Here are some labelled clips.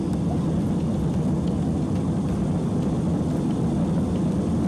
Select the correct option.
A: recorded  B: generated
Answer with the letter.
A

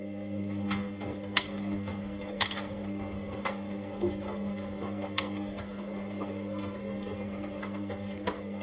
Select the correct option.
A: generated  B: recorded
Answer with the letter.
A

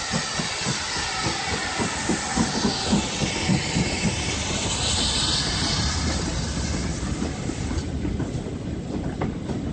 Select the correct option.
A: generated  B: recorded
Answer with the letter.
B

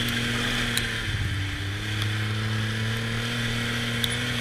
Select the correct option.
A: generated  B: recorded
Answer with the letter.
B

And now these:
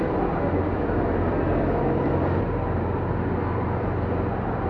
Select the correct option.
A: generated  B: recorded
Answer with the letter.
B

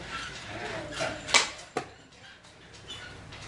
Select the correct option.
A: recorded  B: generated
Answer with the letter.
A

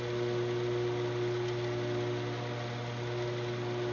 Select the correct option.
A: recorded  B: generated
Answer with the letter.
A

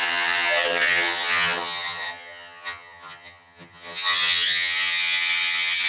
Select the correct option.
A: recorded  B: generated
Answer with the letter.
B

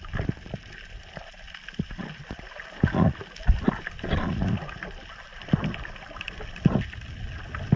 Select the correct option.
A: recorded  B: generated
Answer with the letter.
A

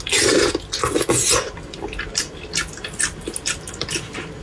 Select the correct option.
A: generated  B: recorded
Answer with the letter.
B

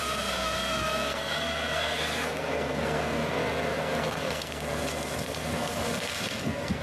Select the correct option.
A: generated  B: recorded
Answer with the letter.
A